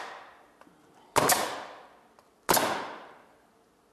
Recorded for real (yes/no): yes